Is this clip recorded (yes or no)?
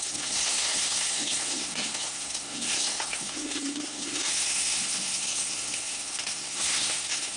no